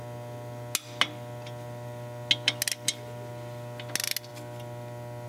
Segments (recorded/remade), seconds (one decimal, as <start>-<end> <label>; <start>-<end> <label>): 0.0-5.3 recorded